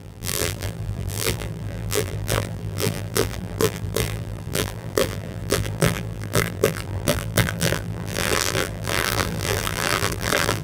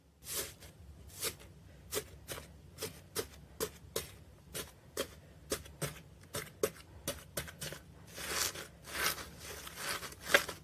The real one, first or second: second